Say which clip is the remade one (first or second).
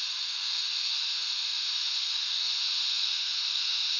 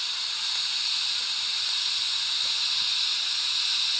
first